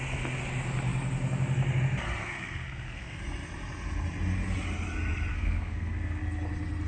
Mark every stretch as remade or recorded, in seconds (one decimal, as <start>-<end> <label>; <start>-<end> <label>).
0.0-2.2 recorded; 2.2-3.2 remade; 3.2-5.3 recorded; 5.3-6.2 remade; 6.2-6.9 recorded